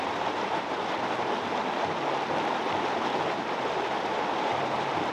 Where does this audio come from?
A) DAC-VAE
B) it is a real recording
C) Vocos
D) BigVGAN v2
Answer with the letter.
D